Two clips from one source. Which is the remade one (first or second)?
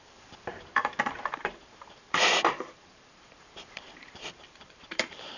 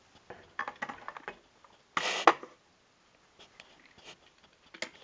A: first